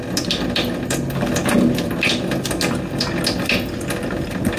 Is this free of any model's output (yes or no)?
yes